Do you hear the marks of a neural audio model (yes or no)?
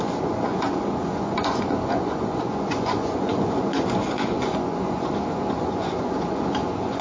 yes